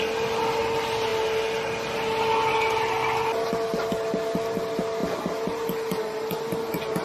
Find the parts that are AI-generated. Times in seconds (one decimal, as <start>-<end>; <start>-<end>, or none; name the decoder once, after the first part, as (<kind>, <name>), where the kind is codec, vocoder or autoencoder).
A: none